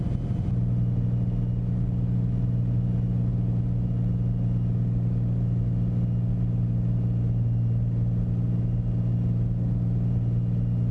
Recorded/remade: recorded